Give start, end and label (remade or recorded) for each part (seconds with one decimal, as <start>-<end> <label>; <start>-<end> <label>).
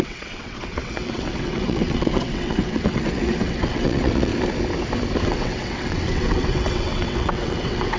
0.0-4.3 remade; 4.3-5.2 recorded; 5.2-8.0 remade